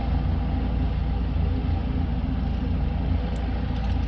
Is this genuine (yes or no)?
yes